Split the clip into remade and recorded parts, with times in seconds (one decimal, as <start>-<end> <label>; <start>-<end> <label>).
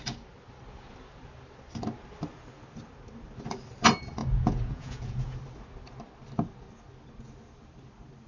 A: 0.0-4.2 recorded; 4.2-5.4 remade; 5.4-8.3 recorded